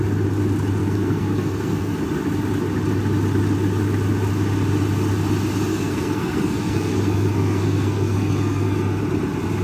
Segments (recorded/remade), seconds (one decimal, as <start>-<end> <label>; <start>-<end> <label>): 0.0-0.8 recorded; 0.8-2.0 remade; 2.0-5.7 recorded; 5.7-9.0 remade; 9.0-9.6 recorded

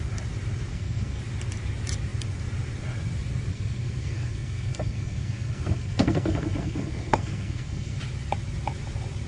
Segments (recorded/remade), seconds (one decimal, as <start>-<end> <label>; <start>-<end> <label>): 0.0-0.7 recorded; 0.7-1.2 remade; 1.2-3.5 recorded; 3.5-8.0 remade; 8.0-9.3 recorded